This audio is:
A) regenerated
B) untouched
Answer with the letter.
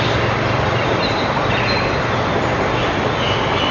B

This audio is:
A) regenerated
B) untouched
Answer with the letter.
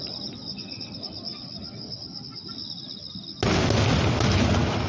B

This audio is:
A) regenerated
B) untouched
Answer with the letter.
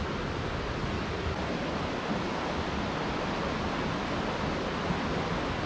B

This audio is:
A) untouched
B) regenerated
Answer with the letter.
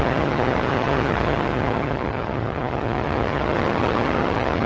B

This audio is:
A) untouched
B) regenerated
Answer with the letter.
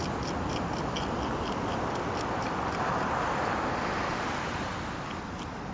A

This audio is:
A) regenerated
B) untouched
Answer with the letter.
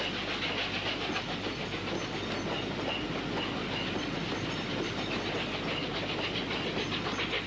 B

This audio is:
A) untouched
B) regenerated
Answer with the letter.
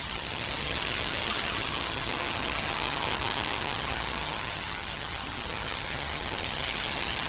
B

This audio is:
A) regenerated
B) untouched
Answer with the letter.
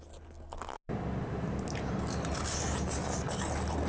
B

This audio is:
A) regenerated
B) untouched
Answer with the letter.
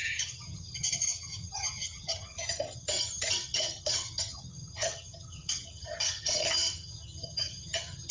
A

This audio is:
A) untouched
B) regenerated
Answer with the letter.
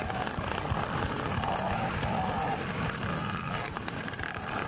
A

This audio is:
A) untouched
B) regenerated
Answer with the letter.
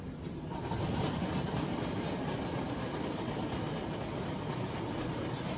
A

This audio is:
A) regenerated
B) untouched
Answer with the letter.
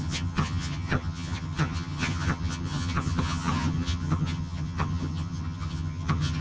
A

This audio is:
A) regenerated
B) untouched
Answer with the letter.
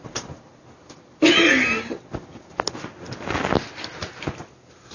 B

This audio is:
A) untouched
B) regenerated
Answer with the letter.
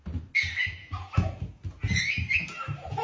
A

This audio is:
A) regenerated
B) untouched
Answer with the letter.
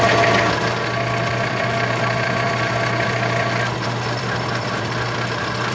B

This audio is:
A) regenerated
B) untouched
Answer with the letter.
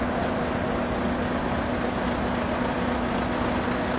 B